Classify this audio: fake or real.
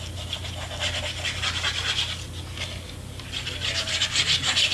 real